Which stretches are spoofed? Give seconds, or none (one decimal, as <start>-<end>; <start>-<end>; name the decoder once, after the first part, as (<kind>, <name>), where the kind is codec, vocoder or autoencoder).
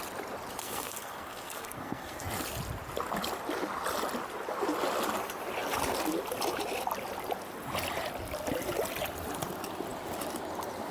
0.6-2.2 (codec, SNAC)